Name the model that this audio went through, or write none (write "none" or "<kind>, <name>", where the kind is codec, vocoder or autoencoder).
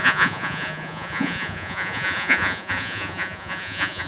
vocoder, Vocos